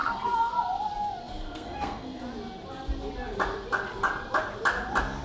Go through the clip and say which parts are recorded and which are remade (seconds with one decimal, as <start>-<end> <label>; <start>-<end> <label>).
0.0-0.5 remade; 0.5-1.2 recorded; 1.2-2.2 remade; 2.2-5.2 recorded